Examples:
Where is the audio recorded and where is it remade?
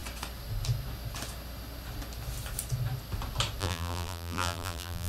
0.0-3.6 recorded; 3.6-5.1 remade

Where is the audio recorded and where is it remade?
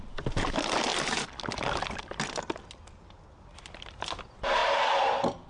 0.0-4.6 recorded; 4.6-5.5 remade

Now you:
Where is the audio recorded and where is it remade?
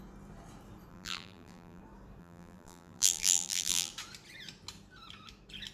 0.0-0.9 recorded; 0.9-1.8 remade; 1.8-2.2 recorded; 2.2-3.9 remade; 3.9-5.7 recorded